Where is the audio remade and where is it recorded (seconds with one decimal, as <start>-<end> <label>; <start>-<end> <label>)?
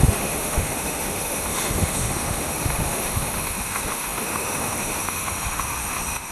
0.0-6.3 remade